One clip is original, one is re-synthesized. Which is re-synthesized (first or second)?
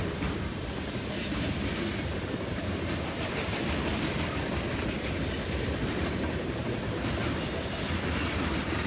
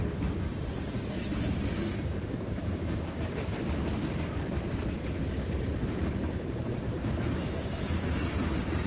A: first